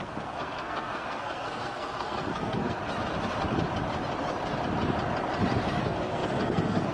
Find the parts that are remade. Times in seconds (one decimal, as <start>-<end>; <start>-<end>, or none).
0.0-2.8; 5.8-6.9